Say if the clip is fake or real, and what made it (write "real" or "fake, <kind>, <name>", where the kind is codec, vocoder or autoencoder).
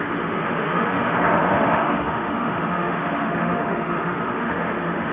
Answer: fake, autoencoder, DAC-VAE